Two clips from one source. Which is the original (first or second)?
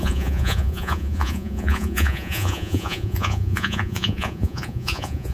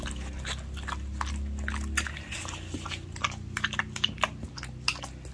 second